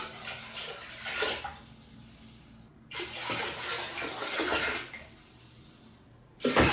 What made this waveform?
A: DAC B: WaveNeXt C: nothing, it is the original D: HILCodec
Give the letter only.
C